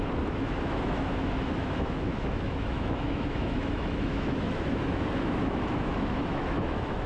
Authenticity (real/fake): fake